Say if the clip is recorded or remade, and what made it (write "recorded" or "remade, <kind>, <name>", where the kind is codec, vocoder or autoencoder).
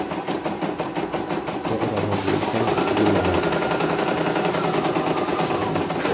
recorded